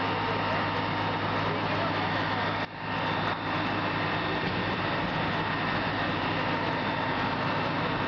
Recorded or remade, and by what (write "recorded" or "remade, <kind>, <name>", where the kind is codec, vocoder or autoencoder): recorded